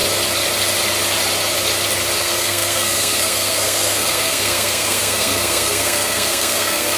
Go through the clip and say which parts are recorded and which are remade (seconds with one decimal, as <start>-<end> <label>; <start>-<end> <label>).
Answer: 0.0-2.2 recorded; 2.2-7.0 remade